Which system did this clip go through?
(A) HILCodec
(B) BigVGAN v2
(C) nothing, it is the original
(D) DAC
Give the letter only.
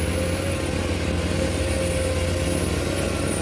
C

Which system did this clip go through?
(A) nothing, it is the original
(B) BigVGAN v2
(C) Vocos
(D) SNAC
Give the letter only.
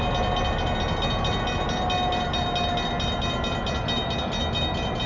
A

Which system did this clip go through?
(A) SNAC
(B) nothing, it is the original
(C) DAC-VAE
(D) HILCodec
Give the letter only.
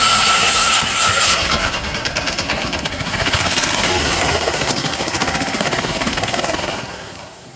A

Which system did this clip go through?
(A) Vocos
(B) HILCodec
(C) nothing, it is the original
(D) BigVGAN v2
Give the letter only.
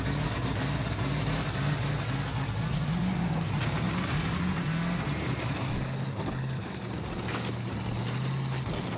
C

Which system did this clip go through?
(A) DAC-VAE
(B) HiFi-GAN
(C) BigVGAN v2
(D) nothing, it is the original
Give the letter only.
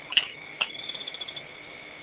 A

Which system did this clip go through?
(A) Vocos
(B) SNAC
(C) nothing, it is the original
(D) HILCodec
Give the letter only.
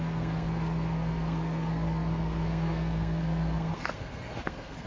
B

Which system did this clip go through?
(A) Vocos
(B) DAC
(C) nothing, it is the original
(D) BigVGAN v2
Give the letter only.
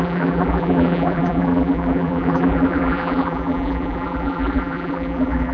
D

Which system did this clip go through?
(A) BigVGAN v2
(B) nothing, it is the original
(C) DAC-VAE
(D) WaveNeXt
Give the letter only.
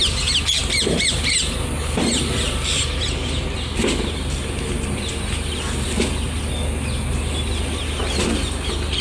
B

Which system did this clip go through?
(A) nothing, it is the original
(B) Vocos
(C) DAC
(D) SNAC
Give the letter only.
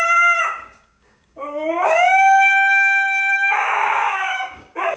C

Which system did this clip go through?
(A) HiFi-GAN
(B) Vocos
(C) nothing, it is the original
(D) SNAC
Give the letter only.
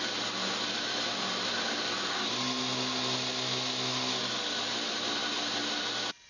C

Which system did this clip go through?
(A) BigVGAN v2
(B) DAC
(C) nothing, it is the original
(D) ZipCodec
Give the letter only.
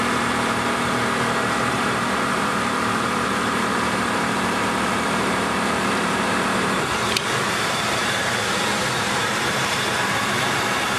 A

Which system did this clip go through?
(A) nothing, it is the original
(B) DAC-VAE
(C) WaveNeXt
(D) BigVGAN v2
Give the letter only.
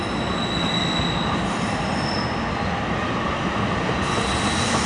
A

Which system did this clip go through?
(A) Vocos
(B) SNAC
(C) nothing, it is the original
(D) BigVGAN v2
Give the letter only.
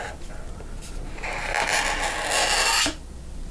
C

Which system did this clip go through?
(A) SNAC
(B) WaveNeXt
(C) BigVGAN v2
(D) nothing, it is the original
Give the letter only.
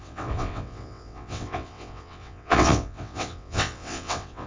B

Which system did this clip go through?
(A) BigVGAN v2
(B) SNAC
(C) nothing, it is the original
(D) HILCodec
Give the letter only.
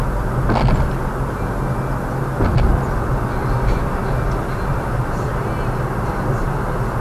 C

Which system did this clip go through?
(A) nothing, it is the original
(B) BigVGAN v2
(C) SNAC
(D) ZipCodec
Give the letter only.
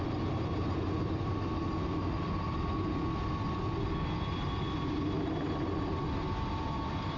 A